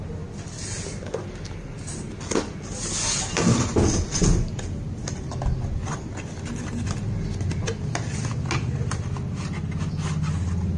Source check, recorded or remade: recorded